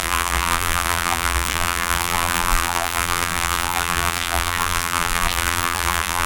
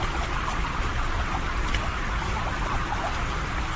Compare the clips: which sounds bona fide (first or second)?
second